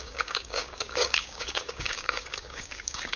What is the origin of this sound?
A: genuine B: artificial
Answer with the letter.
B